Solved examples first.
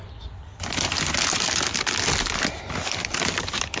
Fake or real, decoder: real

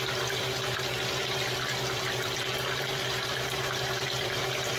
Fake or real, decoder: fake, vocoder, BigVGAN v2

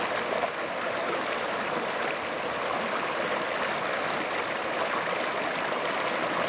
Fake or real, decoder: fake, vocoder, BigVGAN v2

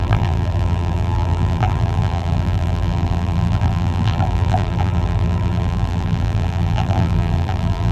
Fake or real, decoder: fake, vocoder, BigVGAN v2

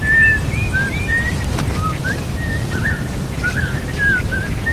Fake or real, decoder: fake, vocoder, BigVGAN v2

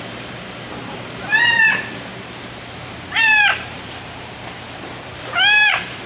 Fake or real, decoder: fake, vocoder, BigVGAN v2